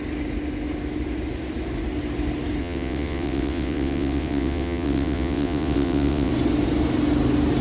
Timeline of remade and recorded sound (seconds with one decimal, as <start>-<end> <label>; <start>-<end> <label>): 0.0-2.6 recorded; 2.6-6.3 remade; 6.3-7.6 recorded